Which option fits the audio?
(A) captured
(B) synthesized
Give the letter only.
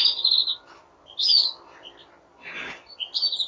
A